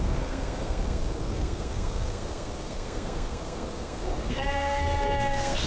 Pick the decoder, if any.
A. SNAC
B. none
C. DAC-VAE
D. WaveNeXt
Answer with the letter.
A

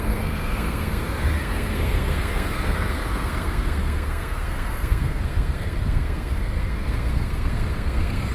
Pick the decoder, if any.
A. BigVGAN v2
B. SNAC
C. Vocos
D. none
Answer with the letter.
B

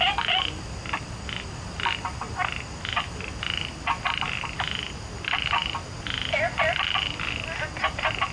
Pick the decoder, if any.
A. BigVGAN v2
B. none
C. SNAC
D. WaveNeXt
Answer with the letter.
B